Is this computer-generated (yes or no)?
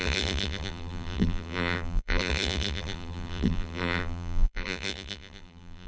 yes